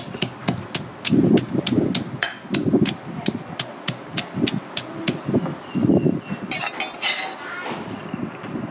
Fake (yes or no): no